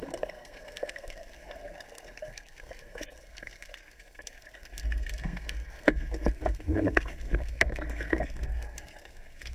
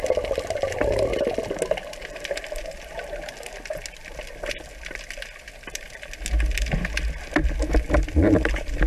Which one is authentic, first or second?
second